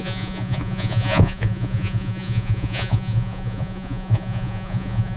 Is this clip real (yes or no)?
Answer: no